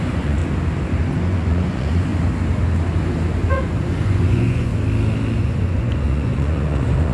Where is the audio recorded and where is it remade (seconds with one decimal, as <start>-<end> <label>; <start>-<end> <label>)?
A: 0.0-0.4 remade; 0.4-1.1 recorded; 1.1-2.1 remade; 2.1-3.5 recorded; 3.5-4.7 remade; 4.7-5.4 recorded; 5.4-7.1 remade